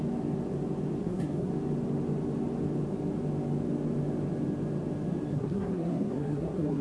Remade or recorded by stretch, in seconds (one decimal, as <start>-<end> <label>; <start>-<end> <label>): 0.0-1.0 recorded; 1.0-1.5 remade; 1.5-5.3 recorded; 5.3-6.8 remade